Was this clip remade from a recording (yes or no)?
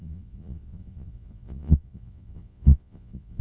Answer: yes